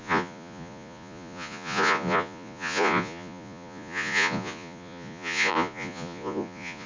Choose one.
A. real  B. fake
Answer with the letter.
B